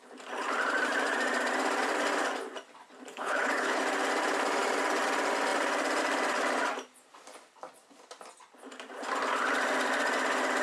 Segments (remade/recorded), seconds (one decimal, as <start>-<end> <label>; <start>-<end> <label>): 0.0-3.1 recorded; 3.1-3.8 remade; 3.8-10.6 recorded